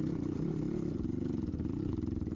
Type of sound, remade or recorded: recorded